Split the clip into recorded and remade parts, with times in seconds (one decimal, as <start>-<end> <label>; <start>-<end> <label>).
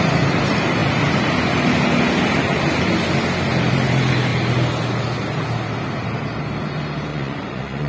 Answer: 0.0-7.1 recorded; 7.1-7.9 remade